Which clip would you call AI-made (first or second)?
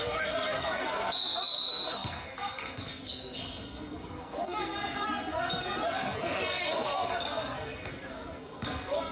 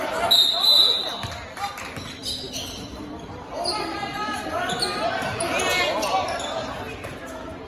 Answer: first